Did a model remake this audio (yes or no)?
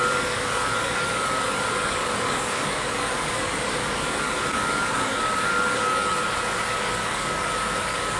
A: yes